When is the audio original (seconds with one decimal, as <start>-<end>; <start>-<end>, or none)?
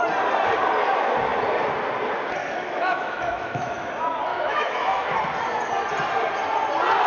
0.0-2.4; 3.9-4.3; 5.2-7.1